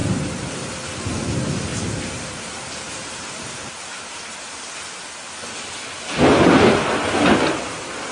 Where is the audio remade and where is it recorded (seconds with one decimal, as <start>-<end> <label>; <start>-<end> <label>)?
0.0-1.7 recorded; 1.7-4.6 remade; 4.6-8.1 recorded